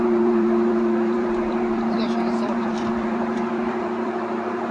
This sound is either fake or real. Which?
fake